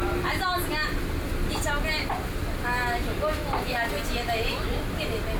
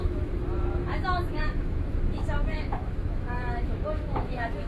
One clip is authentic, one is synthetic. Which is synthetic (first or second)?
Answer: second